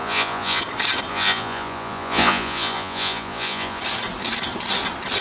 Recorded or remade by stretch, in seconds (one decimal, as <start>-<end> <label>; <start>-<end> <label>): 0.0-0.6 remade; 0.6-1.1 recorded; 1.1-3.8 remade; 3.8-5.2 recorded